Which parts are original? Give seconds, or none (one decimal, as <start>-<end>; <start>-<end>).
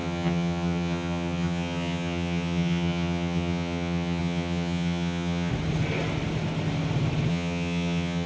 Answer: 5.5-7.3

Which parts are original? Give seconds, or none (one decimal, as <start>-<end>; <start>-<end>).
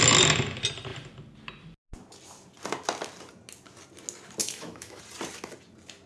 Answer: 0.0-4.4; 5.0-6.1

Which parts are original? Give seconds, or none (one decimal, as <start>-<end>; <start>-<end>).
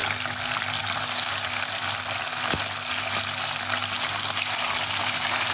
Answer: 0.0-5.5